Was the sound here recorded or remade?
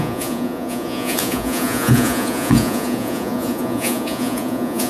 remade